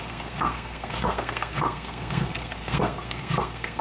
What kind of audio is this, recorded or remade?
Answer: remade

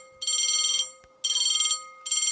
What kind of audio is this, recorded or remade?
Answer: recorded